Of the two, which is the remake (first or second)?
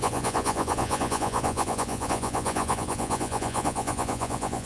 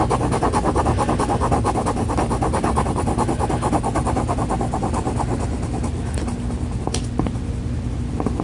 first